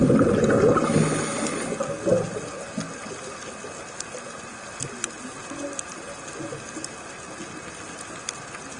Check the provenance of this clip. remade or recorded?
recorded